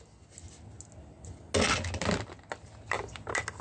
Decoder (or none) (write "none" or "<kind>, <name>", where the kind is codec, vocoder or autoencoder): none